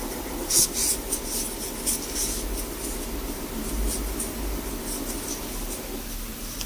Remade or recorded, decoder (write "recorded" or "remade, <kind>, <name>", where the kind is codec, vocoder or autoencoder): recorded